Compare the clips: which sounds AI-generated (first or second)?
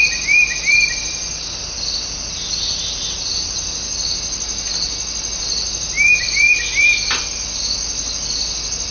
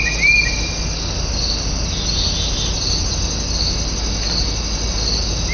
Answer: first